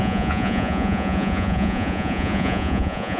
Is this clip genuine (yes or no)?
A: no